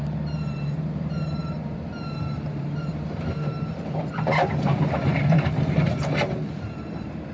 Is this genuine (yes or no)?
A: no